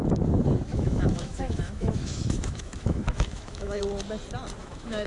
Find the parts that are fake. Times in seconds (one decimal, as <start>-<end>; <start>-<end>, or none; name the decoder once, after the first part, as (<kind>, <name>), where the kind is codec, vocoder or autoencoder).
0.7-3.8 (autoencoder, DAC-VAE); 4.6-5.1